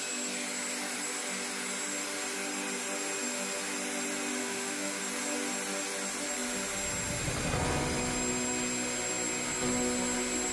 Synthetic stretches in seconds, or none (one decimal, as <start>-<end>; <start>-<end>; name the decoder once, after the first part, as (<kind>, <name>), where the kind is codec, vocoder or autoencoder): 4.4-5.0 (autoencoder, DAC-VAE)